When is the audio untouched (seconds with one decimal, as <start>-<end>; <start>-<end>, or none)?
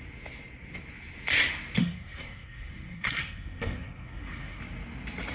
0.0-1.8; 4.6-5.3